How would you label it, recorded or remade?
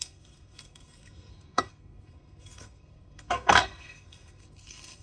remade